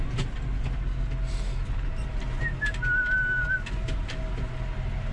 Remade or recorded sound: recorded